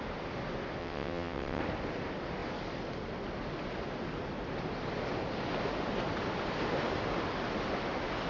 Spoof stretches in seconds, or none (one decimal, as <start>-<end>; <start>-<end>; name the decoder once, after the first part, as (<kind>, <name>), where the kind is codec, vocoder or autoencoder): 0.8-1.6 (vocoder, WaveNeXt)

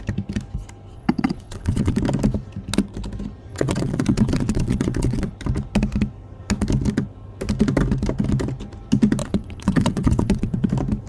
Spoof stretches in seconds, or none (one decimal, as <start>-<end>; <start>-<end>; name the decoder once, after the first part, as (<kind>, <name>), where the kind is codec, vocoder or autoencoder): 0.9-2.0 (vocoder, WaveNeXt); 3.5-5.3; 9.2-10.7

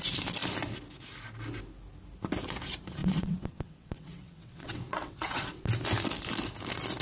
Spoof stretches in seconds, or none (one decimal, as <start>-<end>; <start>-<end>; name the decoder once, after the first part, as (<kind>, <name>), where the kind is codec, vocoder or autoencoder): 3.0-5.5 (vocoder, WaveNeXt)

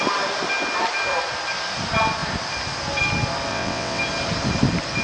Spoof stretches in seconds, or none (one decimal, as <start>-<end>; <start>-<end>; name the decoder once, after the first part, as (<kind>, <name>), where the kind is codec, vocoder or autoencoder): 3.5-4.0 (vocoder, WaveNeXt)

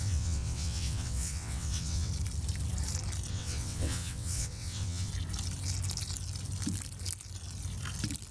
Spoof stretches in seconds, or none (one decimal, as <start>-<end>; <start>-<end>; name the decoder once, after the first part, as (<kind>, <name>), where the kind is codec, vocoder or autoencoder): 0.0-2.1 (vocoder, WaveNeXt); 3.3-5.1

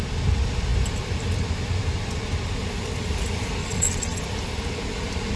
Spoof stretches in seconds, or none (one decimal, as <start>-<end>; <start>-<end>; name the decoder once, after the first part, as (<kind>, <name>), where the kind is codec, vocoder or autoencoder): 3.6-4.2 (vocoder, WaveNeXt)

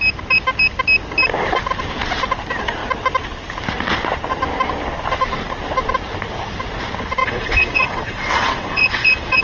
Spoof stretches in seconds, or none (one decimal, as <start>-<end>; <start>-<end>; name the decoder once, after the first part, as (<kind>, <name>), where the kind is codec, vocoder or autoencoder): 7.2-9.4 (vocoder, WaveNeXt)

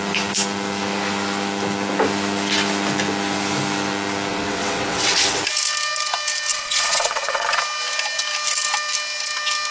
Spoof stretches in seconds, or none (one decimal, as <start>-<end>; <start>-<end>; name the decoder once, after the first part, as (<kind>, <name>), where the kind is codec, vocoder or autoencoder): 4.3-5.4 (vocoder, WaveNeXt); 6.5-7.6